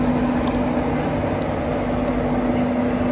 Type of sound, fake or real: real